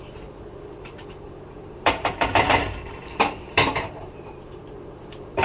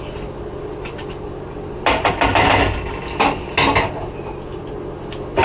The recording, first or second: second